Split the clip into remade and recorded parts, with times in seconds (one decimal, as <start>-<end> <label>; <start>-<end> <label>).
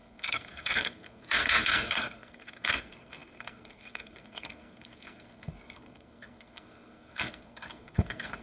0.0-8.4 remade